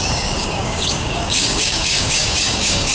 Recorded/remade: remade